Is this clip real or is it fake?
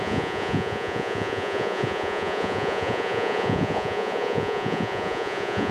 fake